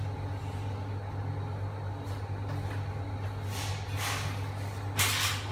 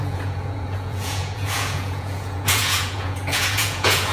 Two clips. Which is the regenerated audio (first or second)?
second